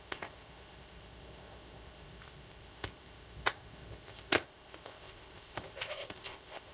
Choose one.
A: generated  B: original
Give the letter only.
A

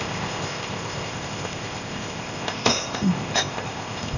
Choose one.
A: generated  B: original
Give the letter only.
A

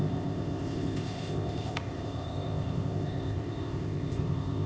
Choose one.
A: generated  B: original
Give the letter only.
A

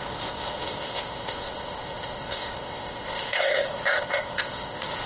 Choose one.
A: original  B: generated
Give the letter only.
B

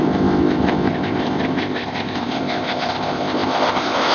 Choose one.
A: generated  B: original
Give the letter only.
A